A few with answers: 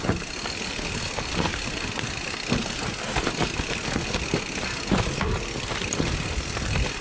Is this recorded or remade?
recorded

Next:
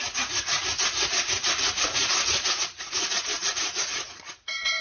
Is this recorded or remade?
remade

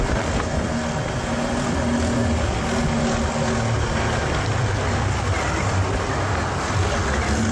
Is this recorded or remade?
recorded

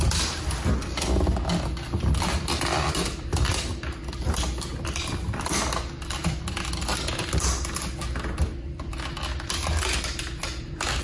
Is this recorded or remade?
recorded